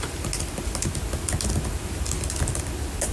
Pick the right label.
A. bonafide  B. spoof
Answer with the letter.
A